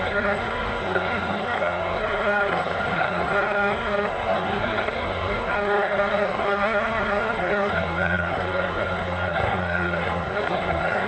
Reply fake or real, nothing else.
fake